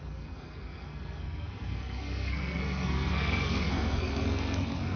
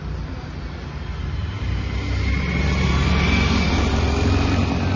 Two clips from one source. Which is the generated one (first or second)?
first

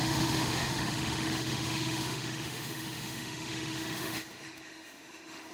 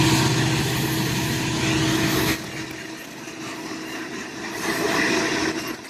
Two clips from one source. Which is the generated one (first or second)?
first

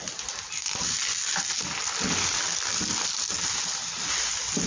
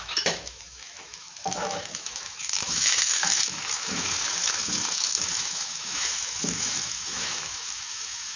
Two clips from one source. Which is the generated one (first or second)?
second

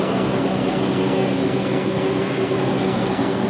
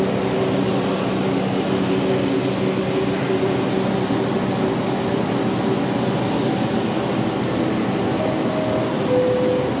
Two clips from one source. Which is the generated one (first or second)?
first